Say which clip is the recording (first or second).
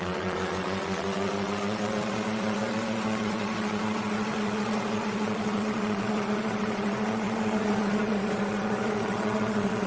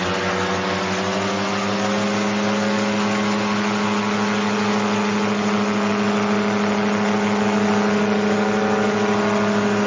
second